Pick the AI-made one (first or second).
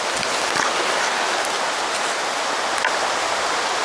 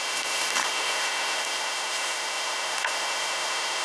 second